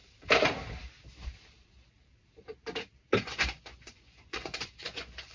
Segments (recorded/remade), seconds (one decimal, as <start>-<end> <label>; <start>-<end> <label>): 0.0-3.2 recorded; 3.2-5.3 remade